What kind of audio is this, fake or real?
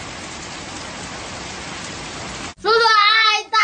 real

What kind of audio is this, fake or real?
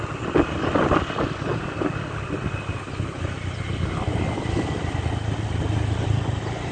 real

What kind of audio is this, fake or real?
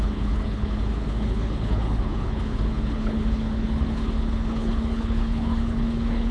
fake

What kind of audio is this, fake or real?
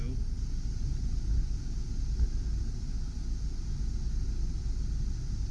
real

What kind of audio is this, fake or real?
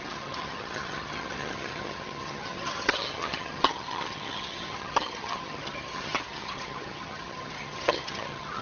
fake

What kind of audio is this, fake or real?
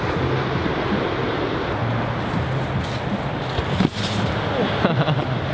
real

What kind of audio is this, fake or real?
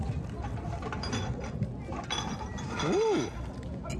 real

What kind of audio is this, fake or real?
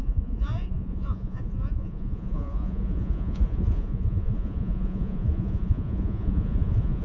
fake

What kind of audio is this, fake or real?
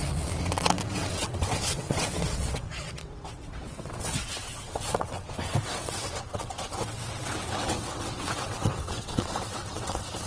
fake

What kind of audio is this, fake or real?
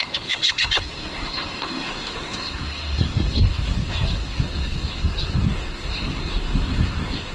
fake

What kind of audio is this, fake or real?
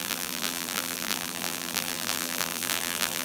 fake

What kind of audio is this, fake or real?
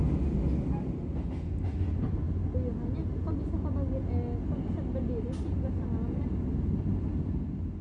real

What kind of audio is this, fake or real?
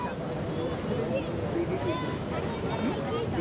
real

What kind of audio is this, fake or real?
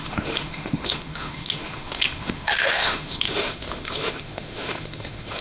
fake